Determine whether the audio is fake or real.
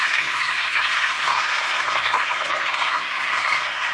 fake